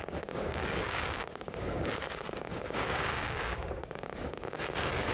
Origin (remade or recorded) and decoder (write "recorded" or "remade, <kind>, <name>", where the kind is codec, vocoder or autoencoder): remade, codec, DAC